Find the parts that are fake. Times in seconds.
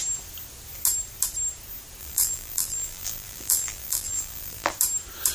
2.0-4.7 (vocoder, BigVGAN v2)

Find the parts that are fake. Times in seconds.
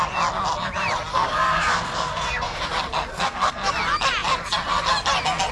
1.1-2.6 (codec, SNAC); 3.1-3.7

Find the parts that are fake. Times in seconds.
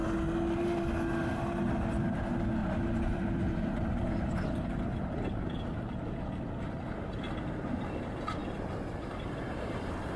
2.6-4.8 (vocoder, BigVGAN v2); 8.4-9.4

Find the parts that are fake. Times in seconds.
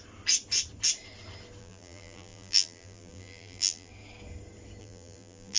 1.6-3.9 (vocoder, BigVGAN v2); 4.8-5.6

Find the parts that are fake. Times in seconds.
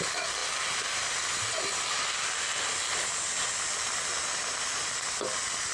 none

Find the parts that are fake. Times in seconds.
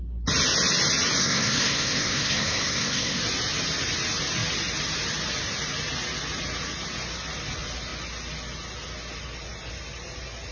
1.2-3.2 (codec, SNAC)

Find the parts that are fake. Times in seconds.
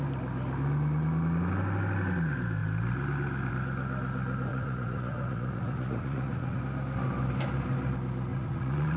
4.5-6.6 (vocoder, Vocos); 8.3-9.0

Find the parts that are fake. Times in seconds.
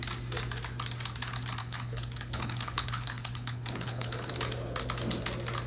1.6-4.3 (codec, HILCodec)